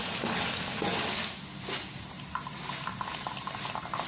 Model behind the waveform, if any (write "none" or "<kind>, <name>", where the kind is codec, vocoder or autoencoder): none